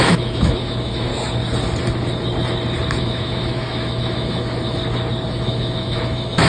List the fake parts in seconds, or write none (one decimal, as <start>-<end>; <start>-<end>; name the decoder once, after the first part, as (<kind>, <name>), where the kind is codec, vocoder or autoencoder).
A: 0.0-1.1 (autoencoder, DAC-VAE); 3.0-4.8; 5.3-6.5